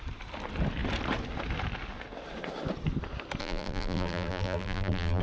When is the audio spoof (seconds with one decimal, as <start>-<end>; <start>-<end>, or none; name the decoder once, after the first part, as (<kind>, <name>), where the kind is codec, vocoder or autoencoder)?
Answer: 3.4-5.2 (vocoder, BigVGAN v2)